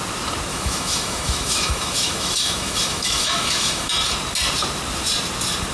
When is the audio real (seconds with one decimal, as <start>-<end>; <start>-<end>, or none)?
0.0-0.5; 3.9-5.7